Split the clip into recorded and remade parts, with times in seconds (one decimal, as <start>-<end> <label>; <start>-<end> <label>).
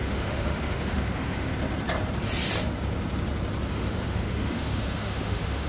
0.0-1.5 remade; 1.5-3.7 recorded; 3.7-5.7 remade